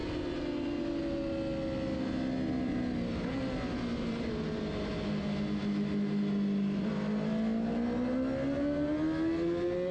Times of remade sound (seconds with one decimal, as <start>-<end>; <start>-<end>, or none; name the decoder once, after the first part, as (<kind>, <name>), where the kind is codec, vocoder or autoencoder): none